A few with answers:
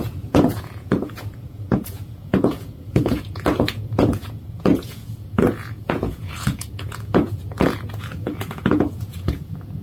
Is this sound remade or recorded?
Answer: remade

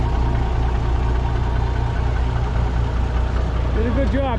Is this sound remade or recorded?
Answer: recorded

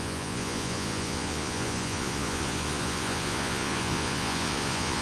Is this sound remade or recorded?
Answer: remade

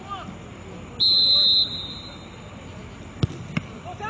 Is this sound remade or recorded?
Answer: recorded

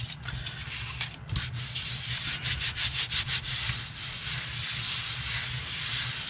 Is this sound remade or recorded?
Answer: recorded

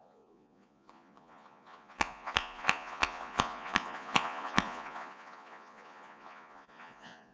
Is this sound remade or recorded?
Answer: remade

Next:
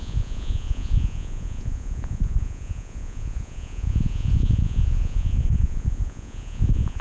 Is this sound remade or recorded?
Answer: remade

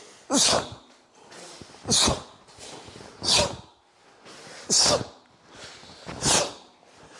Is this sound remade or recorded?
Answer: recorded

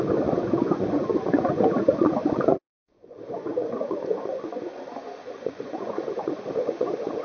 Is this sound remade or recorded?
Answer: remade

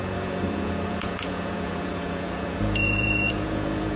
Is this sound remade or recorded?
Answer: remade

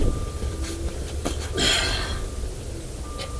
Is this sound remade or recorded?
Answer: recorded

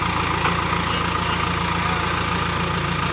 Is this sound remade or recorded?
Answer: recorded